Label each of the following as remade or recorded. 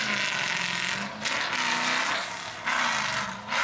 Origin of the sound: recorded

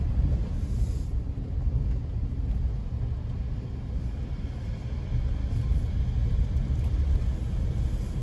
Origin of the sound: recorded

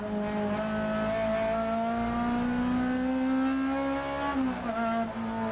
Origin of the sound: recorded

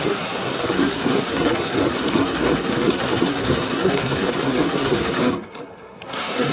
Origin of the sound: remade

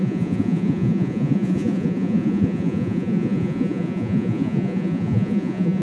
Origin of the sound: remade